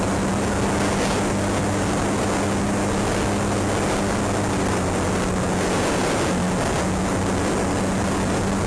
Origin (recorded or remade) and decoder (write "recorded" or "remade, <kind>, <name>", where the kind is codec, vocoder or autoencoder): recorded